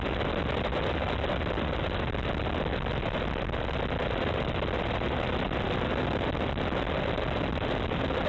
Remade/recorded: recorded